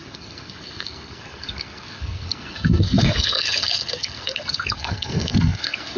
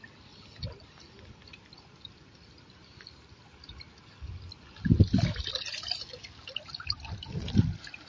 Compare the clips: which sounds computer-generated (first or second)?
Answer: first